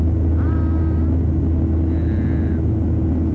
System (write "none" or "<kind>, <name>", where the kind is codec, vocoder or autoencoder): none